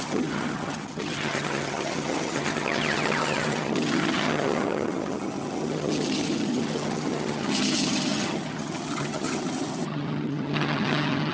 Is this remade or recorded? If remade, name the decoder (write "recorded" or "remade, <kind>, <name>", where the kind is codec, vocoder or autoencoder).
remade, vocoder, HiFi-GAN